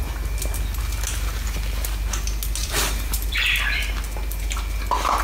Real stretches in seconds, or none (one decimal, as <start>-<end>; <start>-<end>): 0.0-2.6; 3.9-5.2